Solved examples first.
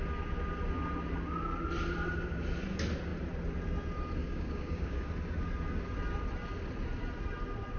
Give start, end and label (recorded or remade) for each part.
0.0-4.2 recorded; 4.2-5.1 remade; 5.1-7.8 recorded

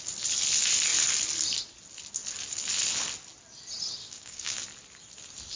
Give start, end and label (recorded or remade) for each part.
0.0-4.0 recorded; 4.0-4.6 remade; 4.6-5.6 recorded